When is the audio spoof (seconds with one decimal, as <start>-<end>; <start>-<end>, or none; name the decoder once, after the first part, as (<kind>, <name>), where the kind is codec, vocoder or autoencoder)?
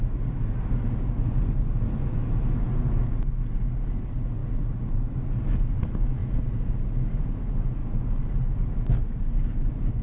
none